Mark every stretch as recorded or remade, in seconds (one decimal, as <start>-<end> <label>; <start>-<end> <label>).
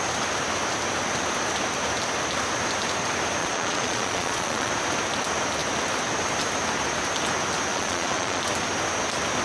0.0-3.4 recorded; 3.4-4.7 remade; 4.7-7.7 recorded; 7.7-8.4 remade; 8.4-9.4 recorded